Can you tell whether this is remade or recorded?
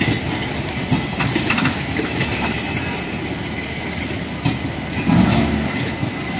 recorded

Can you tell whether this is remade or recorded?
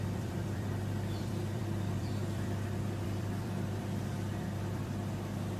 remade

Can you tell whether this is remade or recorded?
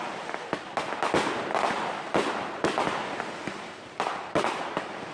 recorded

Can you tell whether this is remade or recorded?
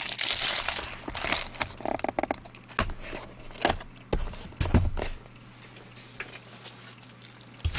recorded